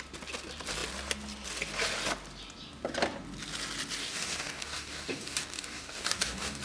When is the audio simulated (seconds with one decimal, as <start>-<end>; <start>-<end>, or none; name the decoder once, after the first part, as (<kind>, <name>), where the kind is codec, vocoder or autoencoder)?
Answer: 4.0-6.6 (codec, DAC)